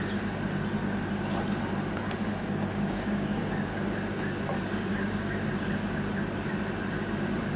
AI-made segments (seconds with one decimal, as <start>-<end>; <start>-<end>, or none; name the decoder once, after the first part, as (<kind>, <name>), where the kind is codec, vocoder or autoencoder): 2.4-3.5 (codec, DAC); 4.9-5.5